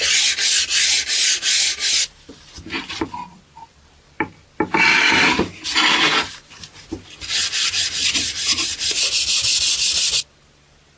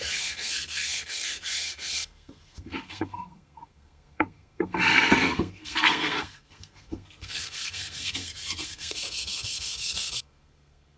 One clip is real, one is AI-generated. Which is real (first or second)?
first